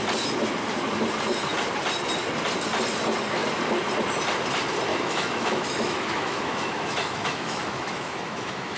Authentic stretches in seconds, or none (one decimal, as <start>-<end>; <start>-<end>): 0.0-4.9